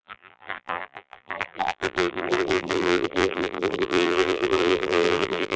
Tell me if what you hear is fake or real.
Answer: fake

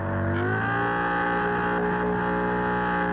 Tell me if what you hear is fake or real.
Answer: real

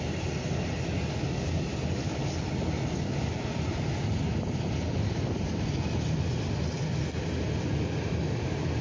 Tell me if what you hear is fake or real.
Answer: real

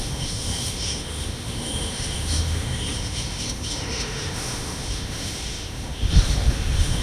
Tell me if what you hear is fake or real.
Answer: fake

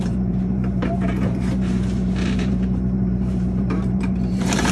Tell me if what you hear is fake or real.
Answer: fake